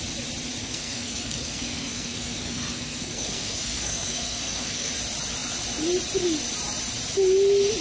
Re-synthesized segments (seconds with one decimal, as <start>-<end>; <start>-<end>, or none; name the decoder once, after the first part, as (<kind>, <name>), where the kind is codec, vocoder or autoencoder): 0.6-4.9 (codec, SNAC)

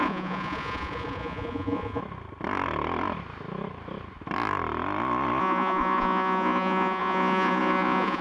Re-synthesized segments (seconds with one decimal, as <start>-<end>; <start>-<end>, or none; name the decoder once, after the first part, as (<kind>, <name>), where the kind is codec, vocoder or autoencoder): 0.0-2.0 (vocoder, Vocos); 5.4-8.2